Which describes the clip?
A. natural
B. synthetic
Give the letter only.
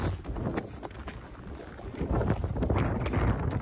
A